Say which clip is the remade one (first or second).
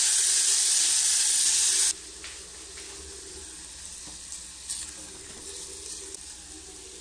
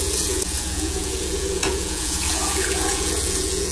second